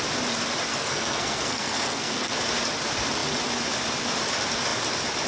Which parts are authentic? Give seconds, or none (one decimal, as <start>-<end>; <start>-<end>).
0.0-0.7; 2.3-5.3

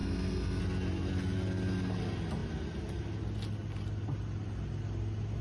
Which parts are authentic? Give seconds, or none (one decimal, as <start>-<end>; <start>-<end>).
0.6-5.4

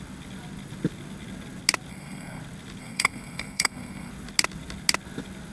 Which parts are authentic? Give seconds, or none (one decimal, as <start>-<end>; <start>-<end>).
0.0-1.9; 2.4-2.8; 4.1-5.5

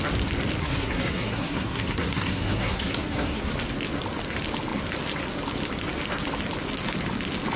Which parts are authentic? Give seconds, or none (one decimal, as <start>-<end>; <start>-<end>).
0.0-0.6; 3.5-7.6

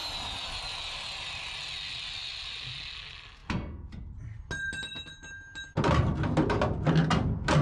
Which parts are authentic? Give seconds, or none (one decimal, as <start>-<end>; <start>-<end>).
0.0-7.6

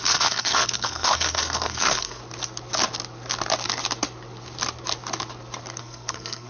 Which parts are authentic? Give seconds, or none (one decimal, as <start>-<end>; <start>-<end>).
2.2-5.8